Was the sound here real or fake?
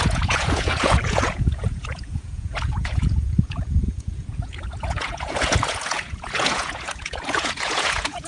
fake